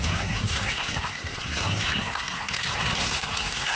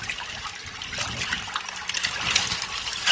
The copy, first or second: first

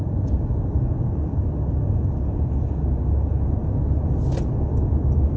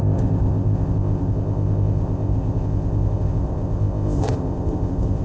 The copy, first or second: second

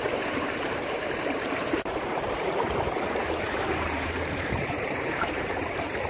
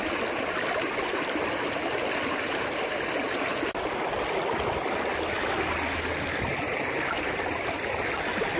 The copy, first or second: first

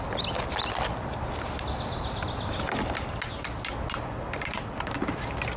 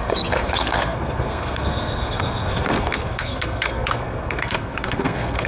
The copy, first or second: second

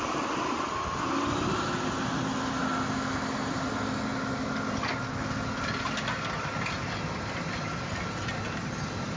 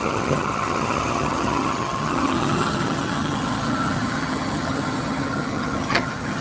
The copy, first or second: second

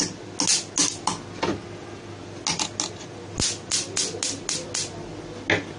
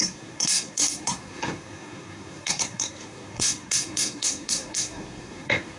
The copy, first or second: second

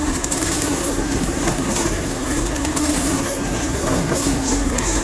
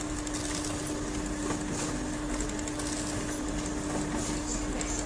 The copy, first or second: first